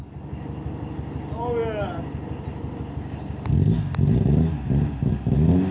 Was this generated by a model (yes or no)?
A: no